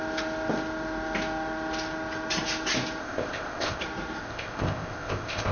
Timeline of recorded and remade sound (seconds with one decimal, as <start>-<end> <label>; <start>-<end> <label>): 0.0-3.0 recorded; 3.0-3.8 remade; 3.8-4.2 recorded; 4.2-5.5 remade